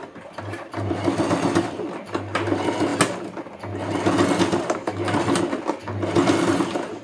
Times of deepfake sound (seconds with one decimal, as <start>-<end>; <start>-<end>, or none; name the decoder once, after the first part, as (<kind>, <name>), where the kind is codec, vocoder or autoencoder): none